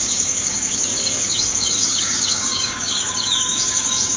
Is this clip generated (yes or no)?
yes